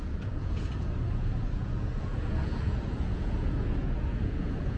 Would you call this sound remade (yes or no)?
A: yes